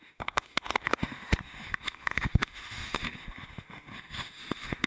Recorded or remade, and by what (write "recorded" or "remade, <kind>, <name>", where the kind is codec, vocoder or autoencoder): remade, autoencoder, DAC-VAE